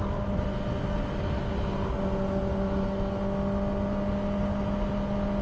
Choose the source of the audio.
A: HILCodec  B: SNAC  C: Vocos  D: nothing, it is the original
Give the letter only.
D